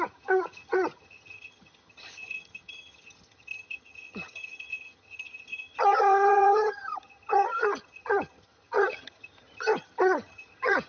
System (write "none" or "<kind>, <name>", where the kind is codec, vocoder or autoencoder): vocoder, HiFi-GAN